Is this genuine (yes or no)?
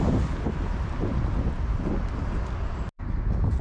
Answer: yes